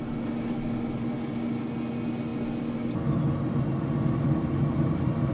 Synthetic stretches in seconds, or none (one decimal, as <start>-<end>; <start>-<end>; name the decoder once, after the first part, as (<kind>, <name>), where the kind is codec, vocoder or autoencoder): none